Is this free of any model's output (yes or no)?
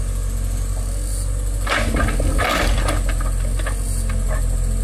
yes